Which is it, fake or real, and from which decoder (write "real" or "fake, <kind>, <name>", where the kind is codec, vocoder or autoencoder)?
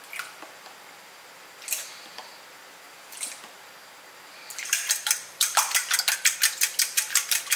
fake, vocoder, BigVGAN v2